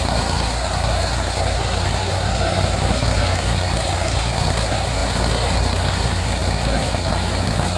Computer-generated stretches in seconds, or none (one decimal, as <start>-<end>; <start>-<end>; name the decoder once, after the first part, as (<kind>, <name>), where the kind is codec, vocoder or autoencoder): 0.0-7.8 (codec, SNAC)